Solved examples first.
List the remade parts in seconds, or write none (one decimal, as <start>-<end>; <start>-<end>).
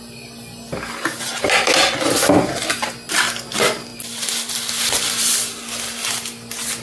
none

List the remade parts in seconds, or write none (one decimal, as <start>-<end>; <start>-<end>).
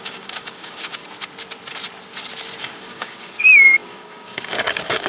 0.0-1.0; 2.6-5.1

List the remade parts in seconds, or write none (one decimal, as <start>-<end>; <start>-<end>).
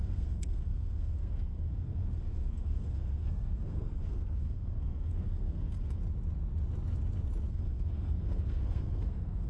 0.0-6.0; 7.5-9.5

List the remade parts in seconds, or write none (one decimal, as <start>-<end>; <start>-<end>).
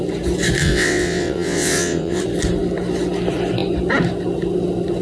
0.6-2.2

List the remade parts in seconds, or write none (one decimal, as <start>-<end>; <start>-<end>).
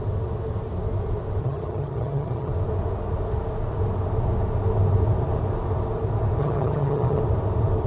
1.4-2.5; 6.4-7.2